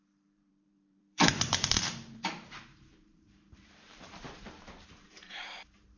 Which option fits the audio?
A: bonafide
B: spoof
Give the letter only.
B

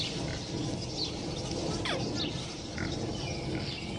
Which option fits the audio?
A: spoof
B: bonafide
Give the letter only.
B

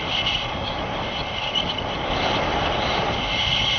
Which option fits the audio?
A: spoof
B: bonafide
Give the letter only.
B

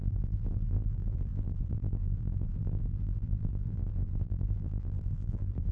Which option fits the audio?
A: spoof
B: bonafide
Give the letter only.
A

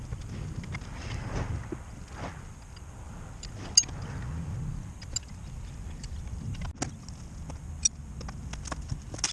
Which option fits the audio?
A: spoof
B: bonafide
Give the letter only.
B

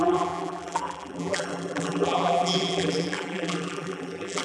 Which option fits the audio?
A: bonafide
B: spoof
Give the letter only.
B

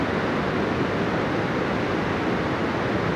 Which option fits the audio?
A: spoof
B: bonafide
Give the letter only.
B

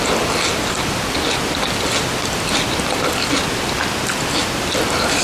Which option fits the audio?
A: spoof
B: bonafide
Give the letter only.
B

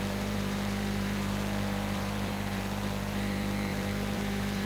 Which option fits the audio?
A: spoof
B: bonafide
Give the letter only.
A